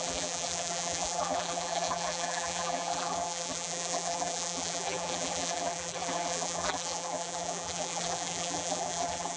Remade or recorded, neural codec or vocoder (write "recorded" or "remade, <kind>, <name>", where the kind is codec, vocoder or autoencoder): remade, vocoder, BigVGAN v2